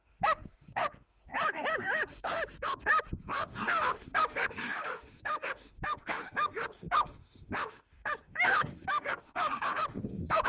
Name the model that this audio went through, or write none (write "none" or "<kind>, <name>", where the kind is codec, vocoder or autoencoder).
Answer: autoencoder, DAC-VAE